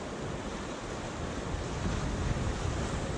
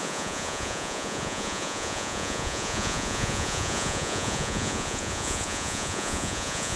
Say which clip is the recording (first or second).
first